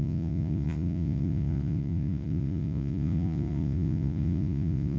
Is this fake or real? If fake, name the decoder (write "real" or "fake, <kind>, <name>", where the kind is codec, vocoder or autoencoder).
fake, vocoder, Vocos